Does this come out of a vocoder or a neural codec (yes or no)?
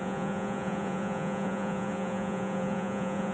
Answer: yes